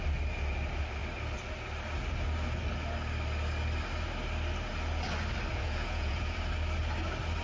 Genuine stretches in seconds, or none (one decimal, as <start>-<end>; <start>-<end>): 0.0-5.5; 6.4-7.4